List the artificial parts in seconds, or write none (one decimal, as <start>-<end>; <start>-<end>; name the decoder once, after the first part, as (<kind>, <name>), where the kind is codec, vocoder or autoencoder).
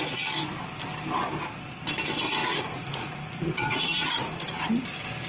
2.4-4.7 (vocoder, Vocos)